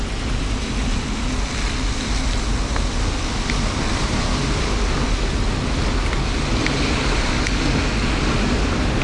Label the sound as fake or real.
real